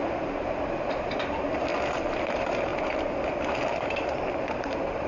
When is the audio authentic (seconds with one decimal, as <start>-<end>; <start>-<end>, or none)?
1.7-2.2; 2.7-4.4